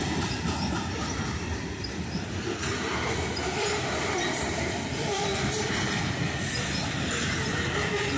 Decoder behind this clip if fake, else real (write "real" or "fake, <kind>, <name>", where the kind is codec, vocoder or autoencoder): fake, vocoder, BigVGAN v2